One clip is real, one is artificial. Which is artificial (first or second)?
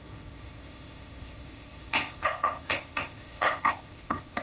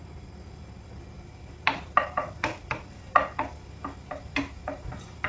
first